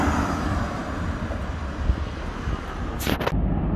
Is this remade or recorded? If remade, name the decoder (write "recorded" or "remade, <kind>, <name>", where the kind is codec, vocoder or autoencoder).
recorded